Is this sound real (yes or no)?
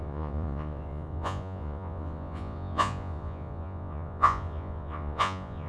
no